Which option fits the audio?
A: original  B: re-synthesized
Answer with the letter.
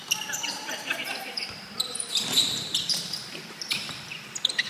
B